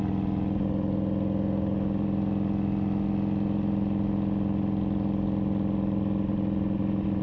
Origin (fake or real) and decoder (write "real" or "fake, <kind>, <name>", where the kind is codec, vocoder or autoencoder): real